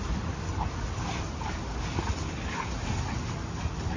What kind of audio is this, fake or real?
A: real